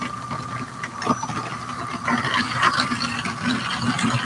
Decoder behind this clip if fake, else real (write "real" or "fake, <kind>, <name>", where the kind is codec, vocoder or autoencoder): real